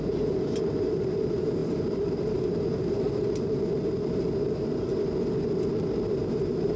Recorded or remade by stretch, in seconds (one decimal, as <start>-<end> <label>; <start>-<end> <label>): 0.0-5.1 remade; 5.1-6.2 recorded; 6.2-6.8 remade